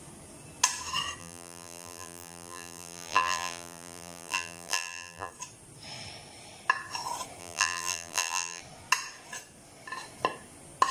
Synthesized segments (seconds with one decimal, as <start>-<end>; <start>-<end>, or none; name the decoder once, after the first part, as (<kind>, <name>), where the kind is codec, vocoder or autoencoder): 1.2-5.3 (vocoder, BigVGAN v2); 7.4-8.6